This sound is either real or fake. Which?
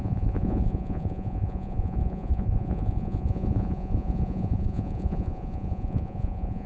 fake